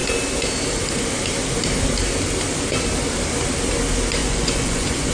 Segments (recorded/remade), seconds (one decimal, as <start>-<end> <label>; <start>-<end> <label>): 0.0-4.2 recorded; 4.2-5.1 remade